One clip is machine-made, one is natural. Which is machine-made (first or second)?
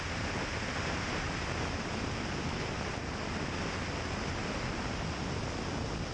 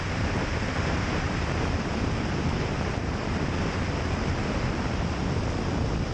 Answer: second